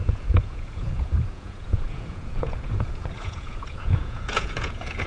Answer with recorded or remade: remade